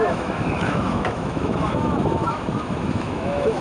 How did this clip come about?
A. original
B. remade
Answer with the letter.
B